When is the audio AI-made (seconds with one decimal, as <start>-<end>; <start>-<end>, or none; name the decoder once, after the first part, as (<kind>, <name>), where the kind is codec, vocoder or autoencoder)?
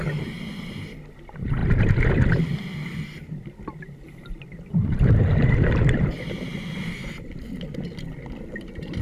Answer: none